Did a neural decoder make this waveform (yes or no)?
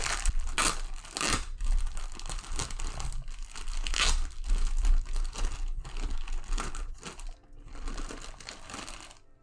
no